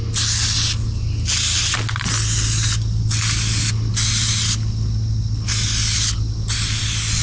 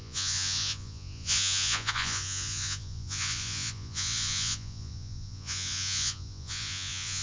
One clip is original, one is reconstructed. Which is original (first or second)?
first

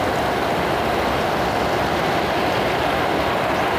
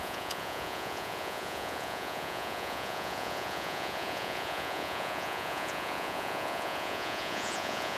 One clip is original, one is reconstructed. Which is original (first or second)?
first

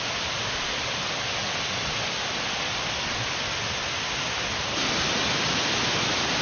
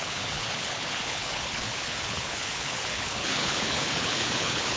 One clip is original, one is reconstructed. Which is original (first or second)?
first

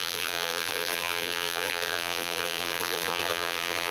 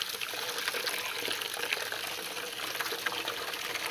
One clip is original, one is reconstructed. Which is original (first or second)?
second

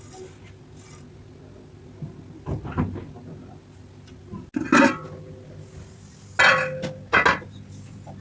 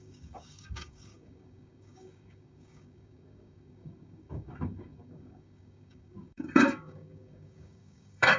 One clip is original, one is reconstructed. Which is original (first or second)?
first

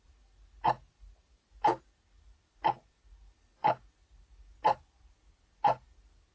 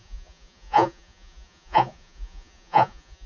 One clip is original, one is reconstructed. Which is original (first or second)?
first